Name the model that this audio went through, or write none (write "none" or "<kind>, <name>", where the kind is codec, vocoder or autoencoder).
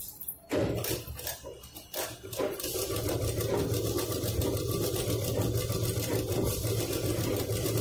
none